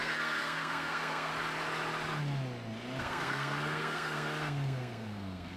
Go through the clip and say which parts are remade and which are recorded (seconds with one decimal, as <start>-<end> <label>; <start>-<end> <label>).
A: 0.0-1.3 remade; 1.3-3.0 recorded; 3.0-5.6 remade